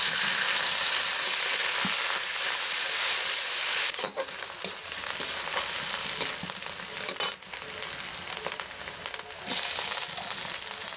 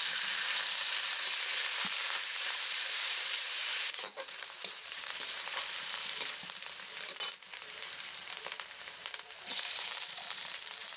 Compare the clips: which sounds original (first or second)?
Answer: first